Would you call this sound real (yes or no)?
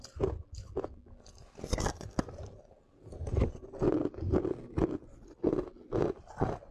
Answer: yes